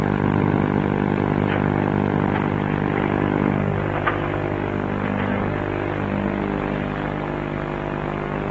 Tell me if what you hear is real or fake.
real